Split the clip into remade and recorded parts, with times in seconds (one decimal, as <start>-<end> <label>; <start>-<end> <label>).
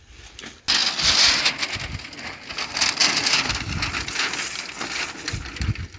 0.0-6.0 recorded